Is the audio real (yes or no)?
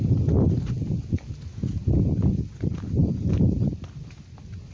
yes